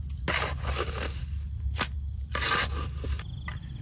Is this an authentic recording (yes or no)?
yes